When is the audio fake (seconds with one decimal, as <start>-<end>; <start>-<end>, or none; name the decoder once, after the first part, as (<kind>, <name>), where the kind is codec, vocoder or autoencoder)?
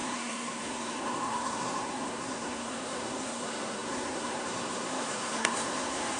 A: 0.0-6.2 (codec, SNAC)